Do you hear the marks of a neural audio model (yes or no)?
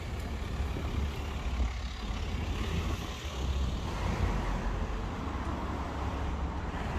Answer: no